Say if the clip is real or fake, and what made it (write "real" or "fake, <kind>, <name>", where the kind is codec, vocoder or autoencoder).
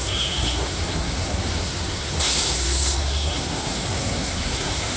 fake, codec, SNAC